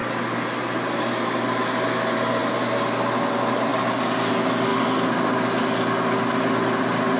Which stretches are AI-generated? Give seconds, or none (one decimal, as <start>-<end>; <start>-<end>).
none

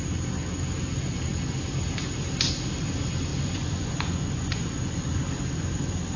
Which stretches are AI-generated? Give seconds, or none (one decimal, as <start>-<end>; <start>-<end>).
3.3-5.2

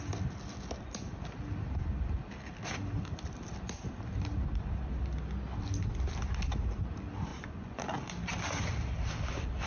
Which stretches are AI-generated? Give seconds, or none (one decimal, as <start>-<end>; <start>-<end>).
7.3-7.8

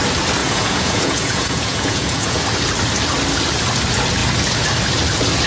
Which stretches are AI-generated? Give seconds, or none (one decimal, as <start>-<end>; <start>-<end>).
0.4-2.4